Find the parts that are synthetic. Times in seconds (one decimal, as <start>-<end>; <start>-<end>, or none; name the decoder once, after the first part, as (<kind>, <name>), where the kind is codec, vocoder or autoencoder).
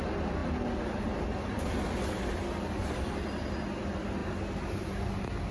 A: 0.0-0.4 (vocoder, BigVGAN v2); 2.7-4.2